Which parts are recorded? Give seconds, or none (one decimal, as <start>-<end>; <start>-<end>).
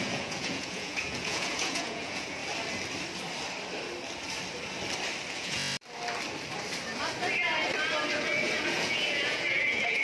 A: 2.4-5.3; 5.7-8.1